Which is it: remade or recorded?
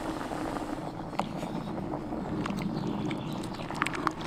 recorded